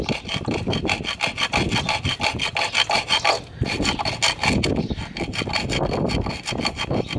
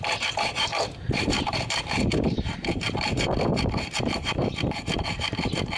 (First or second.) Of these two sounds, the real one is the first